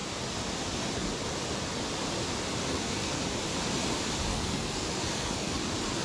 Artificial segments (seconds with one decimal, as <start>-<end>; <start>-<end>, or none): 2.7-3.2; 4.3-5.6